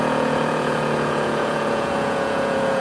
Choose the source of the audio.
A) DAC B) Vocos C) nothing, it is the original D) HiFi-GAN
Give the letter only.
B